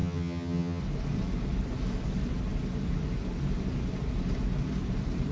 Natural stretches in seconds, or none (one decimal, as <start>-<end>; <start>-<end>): 0.8-5.3